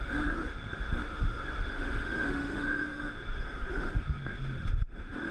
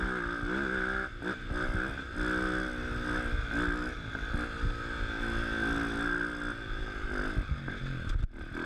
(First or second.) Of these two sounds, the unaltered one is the second